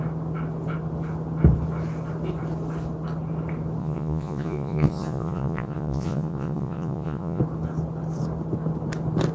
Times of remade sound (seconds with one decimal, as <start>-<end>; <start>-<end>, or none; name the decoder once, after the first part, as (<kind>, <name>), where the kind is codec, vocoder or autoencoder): 3.8-7.4 (vocoder, Vocos)